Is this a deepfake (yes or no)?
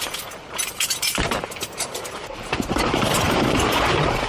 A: yes